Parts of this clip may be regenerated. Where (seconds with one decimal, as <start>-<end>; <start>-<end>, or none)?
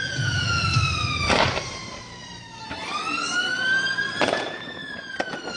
0.0-0.7; 4.1-4.8